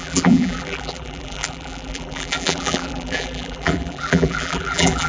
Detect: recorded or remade remade